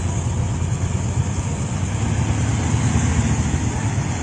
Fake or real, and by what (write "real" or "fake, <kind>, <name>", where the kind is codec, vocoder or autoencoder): real